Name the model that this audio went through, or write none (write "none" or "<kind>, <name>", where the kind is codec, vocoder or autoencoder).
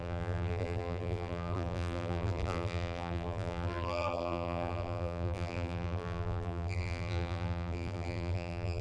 vocoder, BigVGAN v2